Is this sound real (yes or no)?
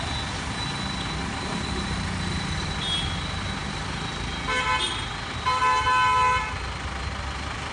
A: yes